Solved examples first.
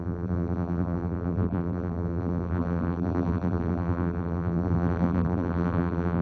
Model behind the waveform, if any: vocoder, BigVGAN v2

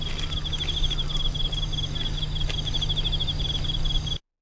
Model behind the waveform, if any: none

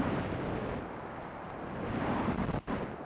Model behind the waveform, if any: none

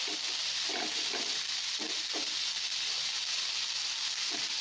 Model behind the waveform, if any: none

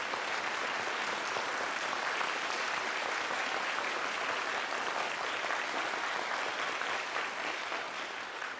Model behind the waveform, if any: none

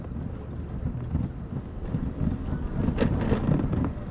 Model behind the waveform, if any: none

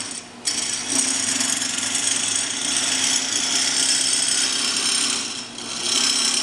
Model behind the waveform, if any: none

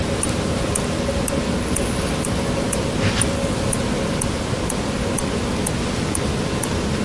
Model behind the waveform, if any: none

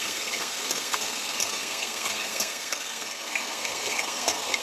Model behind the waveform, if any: codec, SNAC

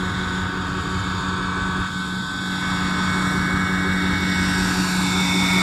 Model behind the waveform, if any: none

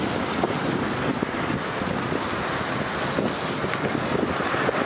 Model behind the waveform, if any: none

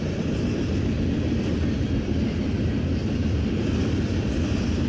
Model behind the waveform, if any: none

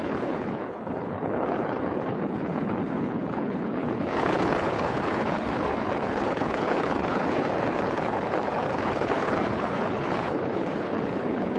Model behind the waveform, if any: codec, HILCodec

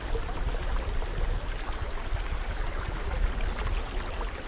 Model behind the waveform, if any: none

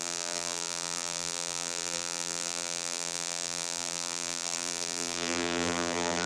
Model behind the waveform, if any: vocoder, BigVGAN v2